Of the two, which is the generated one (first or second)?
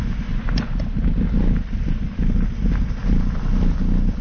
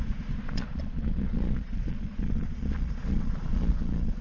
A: second